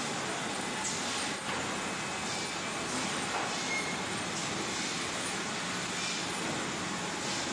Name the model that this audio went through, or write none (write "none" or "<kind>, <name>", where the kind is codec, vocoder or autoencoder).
none